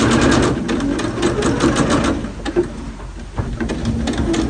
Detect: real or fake real